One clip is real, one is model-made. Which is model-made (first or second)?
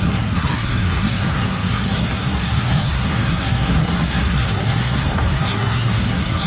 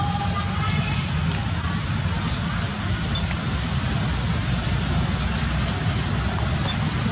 first